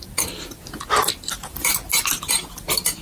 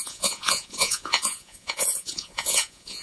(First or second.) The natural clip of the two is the first